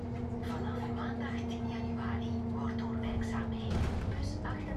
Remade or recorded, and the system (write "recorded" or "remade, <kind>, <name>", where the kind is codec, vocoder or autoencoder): recorded